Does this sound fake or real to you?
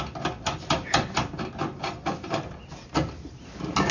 real